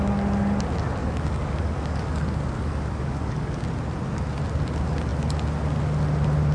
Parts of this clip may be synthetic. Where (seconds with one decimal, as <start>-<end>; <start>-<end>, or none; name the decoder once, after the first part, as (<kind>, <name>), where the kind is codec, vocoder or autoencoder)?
1.0-3.6 (codec, DAC)